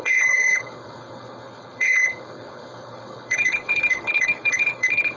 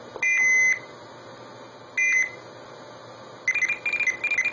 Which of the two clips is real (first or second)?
second